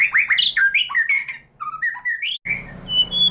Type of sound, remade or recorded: recorded